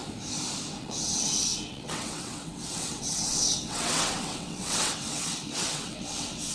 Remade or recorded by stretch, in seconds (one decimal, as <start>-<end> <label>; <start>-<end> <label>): 0.0-0.8 recorded; 0.8-6.5 remade